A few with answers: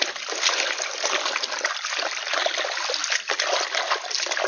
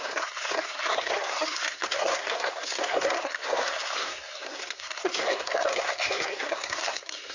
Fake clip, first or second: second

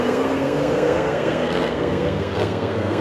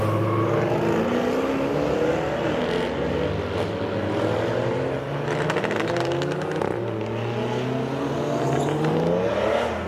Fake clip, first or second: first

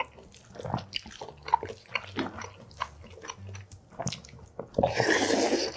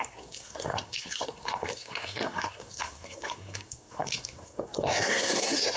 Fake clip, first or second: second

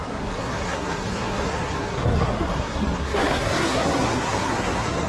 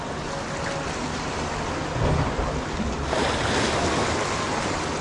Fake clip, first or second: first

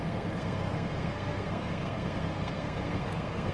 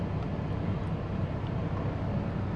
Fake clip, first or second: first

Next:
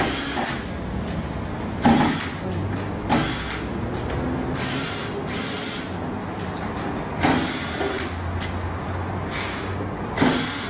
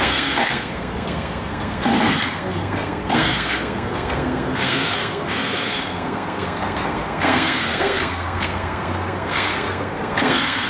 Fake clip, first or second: second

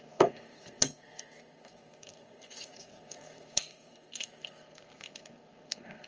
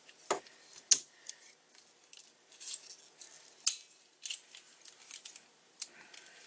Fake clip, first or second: first